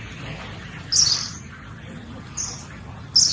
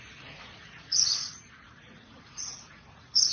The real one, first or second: first